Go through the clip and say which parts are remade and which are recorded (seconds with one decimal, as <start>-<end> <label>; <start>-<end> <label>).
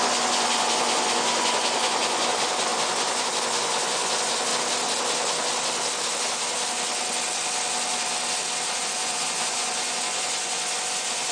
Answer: 0.0-4.5 remade; 4.5-8.8 recorded; 8.8-11.3 remade